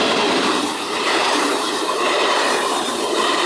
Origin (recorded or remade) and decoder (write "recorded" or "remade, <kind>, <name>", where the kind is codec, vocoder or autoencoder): remade, vocoder, BigVGAN v2